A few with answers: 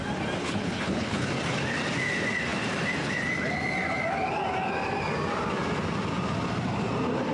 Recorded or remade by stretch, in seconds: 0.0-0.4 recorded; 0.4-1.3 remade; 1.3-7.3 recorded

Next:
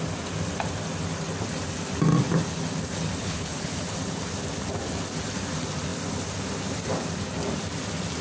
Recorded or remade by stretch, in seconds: 0.0-3.2 recorded; 3.2-3.8 remade; 3.8-8.2 recorded

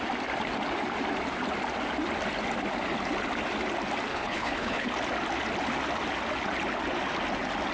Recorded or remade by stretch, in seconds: 0.0-4.1 recorded; 4.1-4.9 remade; 4.9-7.7 recorded

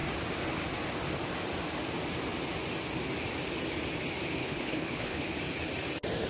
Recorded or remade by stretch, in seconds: 0.0-4.4 recorded; 4.4-5.3 remade; 5.3-6.3 recorded

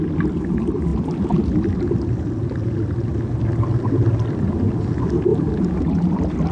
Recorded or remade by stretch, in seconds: 0.0-6.5 recorded

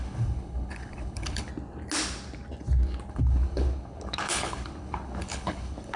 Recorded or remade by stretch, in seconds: 0.0-1.5 remade; 1.5-3.1 recorded; 3.1-6.0 remade

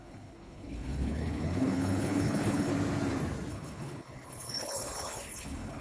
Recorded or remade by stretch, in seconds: 0.0-2.7 remade; 2.7-3.5 recorded; 3.5-5.8 remade

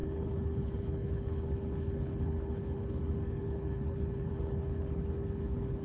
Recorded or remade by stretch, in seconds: 0.0-5.8 remade